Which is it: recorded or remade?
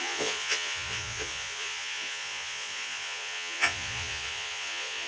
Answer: remade